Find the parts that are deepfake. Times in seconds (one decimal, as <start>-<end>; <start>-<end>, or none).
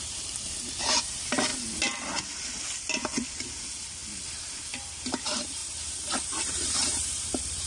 0.0-1.5; 3.5-4.0; 5.0-7.7